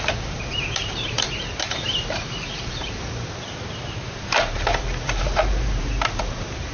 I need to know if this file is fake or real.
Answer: fake